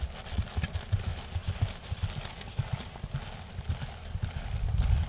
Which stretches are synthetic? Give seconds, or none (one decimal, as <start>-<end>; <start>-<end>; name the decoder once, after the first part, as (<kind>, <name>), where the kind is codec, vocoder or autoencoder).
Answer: none